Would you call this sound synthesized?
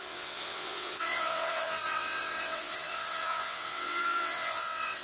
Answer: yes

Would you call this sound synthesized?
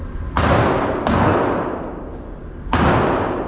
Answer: no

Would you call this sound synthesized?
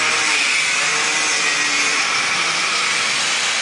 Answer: no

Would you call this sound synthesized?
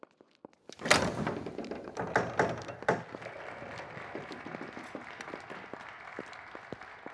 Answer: no